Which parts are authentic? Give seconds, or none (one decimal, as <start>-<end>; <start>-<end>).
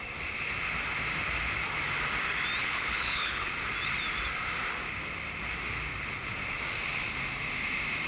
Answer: 0.0-2.6; 3.5-8.1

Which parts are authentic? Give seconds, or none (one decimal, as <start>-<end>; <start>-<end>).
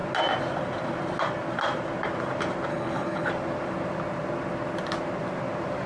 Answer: 0.0-2.7; 3.3-5.9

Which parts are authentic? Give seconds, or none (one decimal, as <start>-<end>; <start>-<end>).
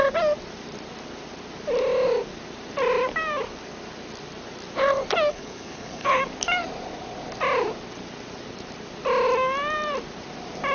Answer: 0.0-5.3; 6.2-10.7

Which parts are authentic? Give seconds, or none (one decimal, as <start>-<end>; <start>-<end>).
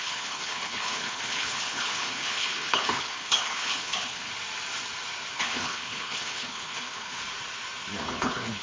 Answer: 4.3-5.3; 7.2-8.0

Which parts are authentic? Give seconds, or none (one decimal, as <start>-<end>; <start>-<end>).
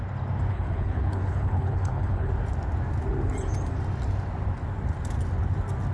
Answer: 0.0-0.5; 2.3-5.9